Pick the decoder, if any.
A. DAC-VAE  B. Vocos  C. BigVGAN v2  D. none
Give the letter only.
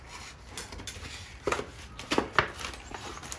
D